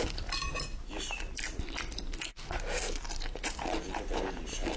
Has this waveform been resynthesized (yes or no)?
no